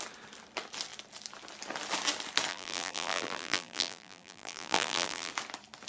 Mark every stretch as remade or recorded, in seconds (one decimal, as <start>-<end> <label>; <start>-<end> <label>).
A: 0.0-2.5 recorded; 2.5-5.3 remade; 5.3-5.9 recorded

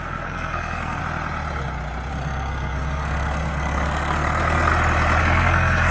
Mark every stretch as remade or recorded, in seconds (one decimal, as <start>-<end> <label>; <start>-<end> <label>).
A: 0.0-1.0 remade; 1.0-2.1 recorded; 2.1-4.7 remade; 4.7-5.2 recorded; 5.2-5.9 remade

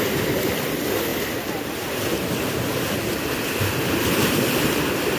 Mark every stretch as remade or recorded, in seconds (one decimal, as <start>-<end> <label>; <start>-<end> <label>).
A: 0.0-1.1 remade; 1.1-4.2 recorded; 4.2-5.2 remade

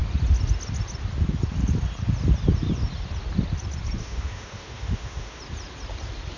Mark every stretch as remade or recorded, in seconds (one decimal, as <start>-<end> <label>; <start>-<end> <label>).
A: 0.0-4.0 recorded; 4.0-5.4 remade; 5.4-6.4 recorded

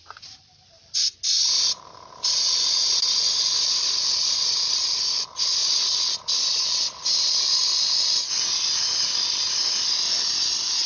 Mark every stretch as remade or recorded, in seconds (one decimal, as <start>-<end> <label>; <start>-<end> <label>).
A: 0.0-10.9 recorded

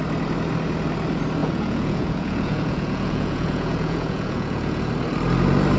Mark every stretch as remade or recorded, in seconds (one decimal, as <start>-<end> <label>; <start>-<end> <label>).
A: 0.0-1.4 recorded; 1.4-4.9 remade; 4.9-5.8 recorded

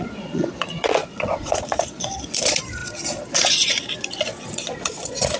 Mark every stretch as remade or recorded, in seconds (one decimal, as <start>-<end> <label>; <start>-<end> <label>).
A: 0.0-5.4 remade

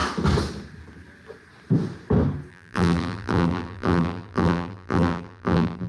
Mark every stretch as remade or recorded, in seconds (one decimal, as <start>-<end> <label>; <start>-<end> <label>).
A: 0.0-2.5 recorded; 2.5-5.9 remade